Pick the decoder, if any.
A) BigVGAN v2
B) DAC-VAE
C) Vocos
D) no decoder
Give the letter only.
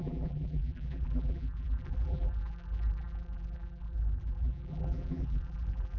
A